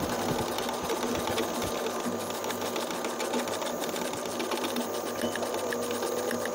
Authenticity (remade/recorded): recorded